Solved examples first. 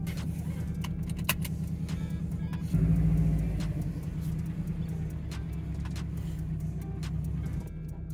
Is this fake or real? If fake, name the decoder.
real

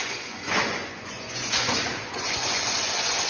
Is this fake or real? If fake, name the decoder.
fake, vocoder, Vocos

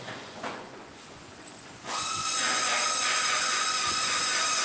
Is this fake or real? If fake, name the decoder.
fake, vocoder, Vocos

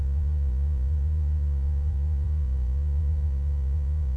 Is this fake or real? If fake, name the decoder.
fake, vocoder, Vocos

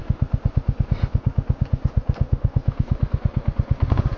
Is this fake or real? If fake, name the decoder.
real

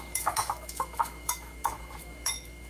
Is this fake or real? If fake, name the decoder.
fake, autoencoder, DAC-VAE